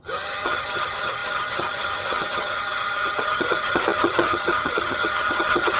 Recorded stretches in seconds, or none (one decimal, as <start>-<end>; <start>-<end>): none